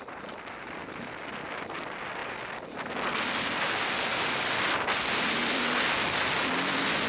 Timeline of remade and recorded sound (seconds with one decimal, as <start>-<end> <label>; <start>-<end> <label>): 0.0-7.1 recorded